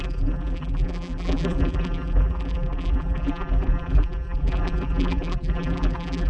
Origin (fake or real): fake